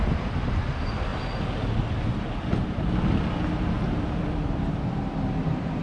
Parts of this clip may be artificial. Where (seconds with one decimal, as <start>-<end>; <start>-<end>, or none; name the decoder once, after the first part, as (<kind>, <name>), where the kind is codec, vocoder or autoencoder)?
0.0-1.1 (vocoder, BigVGAN v2); 4.6-5.8